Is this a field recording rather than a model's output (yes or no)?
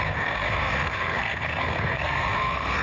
no